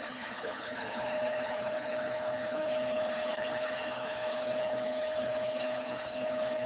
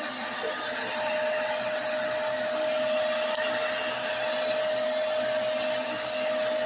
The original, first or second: second